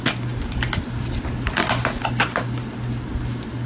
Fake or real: real